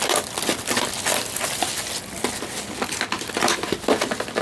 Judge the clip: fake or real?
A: real